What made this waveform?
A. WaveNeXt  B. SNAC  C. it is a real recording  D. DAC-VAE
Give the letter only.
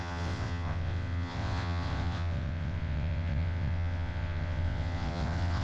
A